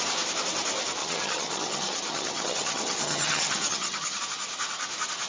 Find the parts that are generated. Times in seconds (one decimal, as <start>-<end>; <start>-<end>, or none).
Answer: 1.0-4.2